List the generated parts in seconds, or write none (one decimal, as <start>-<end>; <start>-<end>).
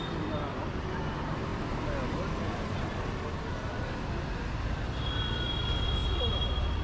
none